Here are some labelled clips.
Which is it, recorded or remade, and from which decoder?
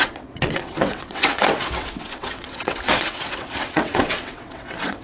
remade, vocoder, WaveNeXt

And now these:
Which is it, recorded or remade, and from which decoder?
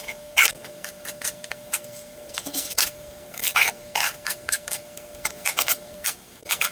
remade, codec, SNAC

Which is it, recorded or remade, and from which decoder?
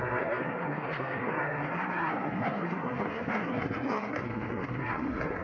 remade, codec, SNAC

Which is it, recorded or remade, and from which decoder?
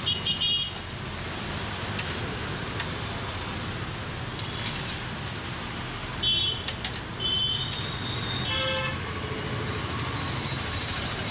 recorded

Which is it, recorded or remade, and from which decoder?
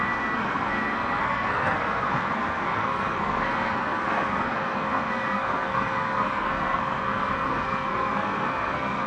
remade, codec, SNAC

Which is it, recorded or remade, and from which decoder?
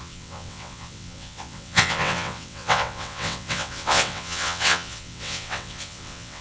remade, vocoder, WaveNeXt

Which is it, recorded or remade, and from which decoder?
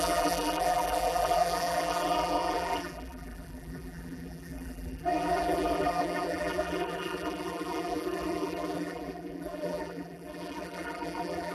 remade, vocoder, BigVGAN v2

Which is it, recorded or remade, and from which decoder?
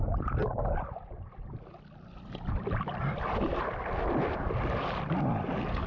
recorded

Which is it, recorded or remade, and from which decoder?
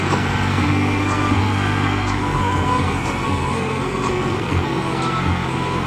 remade, codec, SNAC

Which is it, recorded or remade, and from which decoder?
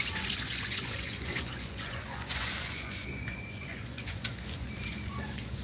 remade, vocoder, Vocos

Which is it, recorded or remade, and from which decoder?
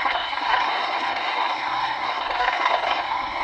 remade, codec, SNAC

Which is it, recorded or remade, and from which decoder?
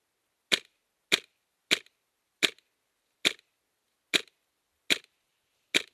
recorded